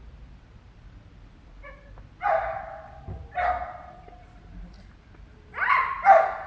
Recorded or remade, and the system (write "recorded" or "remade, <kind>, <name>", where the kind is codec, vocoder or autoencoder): recorded